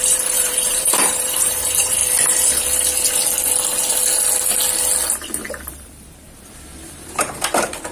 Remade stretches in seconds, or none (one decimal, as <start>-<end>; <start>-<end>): 0.0-2.0; 5.7-7.9